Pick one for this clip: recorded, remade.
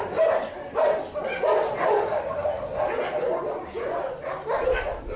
recorded